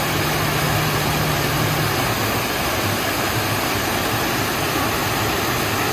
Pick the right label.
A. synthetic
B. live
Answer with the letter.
B